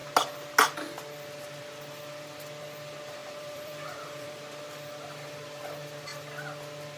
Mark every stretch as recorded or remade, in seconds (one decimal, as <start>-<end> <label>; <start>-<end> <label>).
0.0-3.2 recorded; 3.2-4.4 remade; 4.4-7.0 recorded